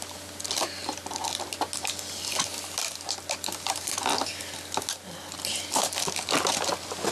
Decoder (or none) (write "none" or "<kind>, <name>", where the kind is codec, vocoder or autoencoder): none